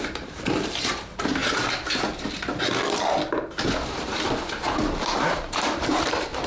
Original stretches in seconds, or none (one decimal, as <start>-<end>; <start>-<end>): 1.4-4.8